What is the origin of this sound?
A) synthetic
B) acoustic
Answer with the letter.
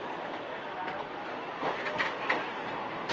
B